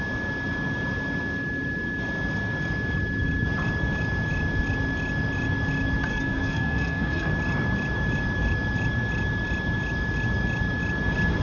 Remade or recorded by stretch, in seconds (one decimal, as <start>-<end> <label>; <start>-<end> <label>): 0.0-6.1 recorded; 6.1-7.3 remade; 7.3-11.4 recorded

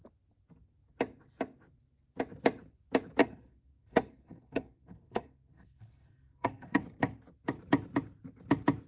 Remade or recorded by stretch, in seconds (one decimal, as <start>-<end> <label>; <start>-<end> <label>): 0.0-3.2 recorded; 3.2-6.8 remade; 6.8-8.9 recorded